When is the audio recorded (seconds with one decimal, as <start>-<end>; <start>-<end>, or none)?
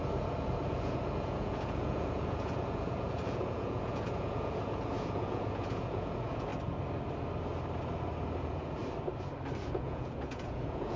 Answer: 6.5-8.4; 8.8-9.6